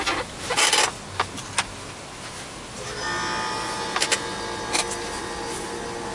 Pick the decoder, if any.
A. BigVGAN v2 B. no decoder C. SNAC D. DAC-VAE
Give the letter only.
B